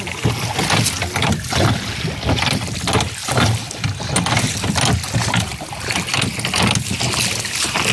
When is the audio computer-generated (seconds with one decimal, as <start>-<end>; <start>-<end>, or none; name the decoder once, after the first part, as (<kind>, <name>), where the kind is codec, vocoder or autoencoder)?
none